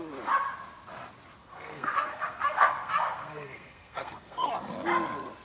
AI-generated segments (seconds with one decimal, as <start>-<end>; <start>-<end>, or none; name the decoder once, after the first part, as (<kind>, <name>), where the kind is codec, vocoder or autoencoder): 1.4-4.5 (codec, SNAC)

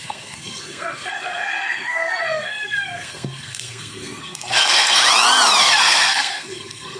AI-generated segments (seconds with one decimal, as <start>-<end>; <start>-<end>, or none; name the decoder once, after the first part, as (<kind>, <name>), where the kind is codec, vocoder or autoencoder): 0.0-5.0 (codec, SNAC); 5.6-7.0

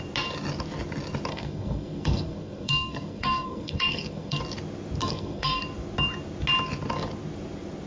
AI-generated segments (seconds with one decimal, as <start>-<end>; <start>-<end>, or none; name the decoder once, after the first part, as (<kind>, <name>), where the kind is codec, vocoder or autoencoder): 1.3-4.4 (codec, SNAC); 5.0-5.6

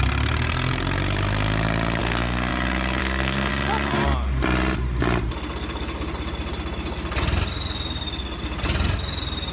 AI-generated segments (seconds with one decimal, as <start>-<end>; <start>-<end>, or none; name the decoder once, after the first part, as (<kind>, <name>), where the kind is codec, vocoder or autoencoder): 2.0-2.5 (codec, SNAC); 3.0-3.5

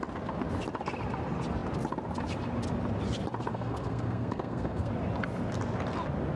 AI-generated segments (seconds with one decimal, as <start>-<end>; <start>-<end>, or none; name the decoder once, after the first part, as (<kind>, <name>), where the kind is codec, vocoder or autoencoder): 3.5-4.9 (codec, SNAC)

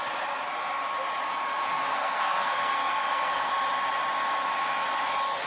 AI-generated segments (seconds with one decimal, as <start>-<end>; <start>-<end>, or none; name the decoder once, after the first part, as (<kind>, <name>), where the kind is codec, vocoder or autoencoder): 1.9-3.5 (codec, SNAC)